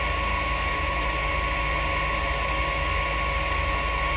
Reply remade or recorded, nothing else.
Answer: recorded